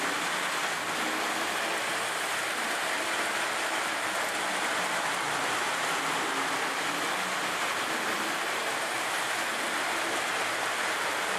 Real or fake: real